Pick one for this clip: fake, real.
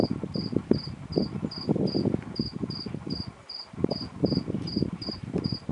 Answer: real